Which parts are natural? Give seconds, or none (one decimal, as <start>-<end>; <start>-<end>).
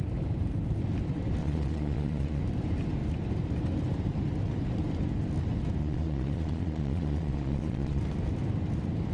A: 0.0-1.4; 2.4-5.8; 8.0-9.1